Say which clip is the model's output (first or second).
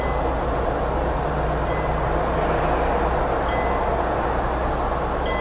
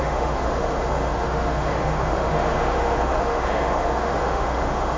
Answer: second